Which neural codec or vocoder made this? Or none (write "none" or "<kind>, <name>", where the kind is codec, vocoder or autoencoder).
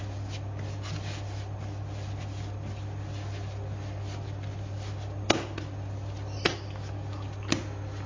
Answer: none